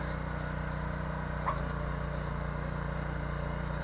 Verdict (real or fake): real